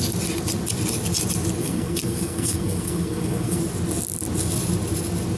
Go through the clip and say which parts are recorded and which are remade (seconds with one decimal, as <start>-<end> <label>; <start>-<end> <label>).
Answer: 0.0-1.6 recorded; 1.6-3.6 remade; 3.6-5.4 recorded